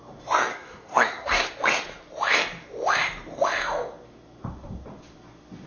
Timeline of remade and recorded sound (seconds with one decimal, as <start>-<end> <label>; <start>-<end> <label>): 0.0-0.5 recorded; 0.5-1.5 remade; 1.5-5.7 recorded